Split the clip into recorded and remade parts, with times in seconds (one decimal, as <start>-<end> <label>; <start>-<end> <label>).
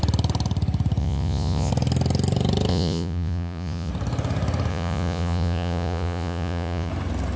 0.0-1.0 recorded; 1.0-1.7 remade; 1.7-2.7 recorded; 2.7-3.9 remade; 3.9-4.7 recorded; 4.7-6.9 remade; 6.9-7.4 recorded